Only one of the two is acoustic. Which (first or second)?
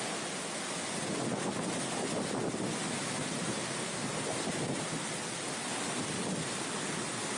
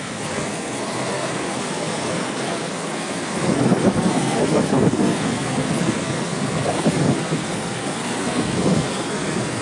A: first